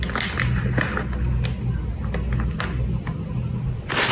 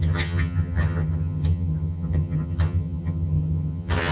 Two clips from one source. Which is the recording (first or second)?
first